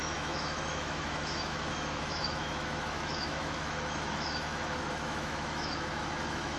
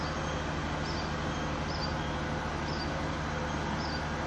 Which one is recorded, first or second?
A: second